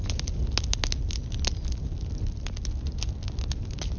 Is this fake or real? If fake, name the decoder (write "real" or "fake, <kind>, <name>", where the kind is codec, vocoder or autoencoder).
real